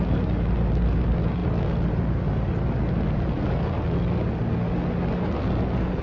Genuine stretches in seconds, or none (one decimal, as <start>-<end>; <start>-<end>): 0.0-6.0